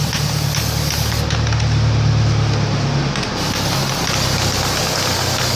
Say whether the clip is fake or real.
real